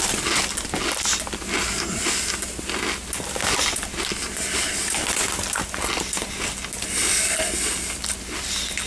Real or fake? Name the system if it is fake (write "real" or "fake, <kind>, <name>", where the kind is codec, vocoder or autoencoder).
real